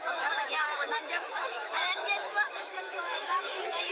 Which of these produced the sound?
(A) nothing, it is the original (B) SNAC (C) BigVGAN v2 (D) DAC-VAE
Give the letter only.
D